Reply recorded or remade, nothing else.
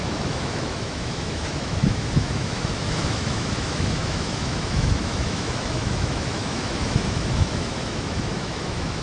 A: remade